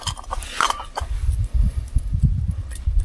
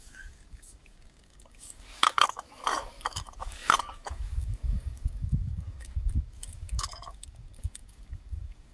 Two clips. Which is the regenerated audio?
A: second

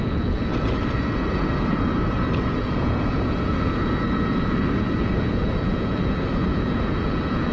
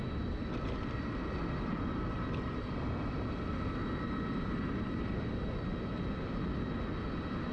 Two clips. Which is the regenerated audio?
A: first